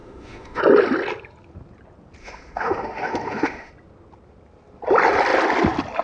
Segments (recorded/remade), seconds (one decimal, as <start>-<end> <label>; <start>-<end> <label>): 0.0-0.6 remade; 0.6-2.2 recorded; 2.2-3.7 remade; 3.7-6.0 recorded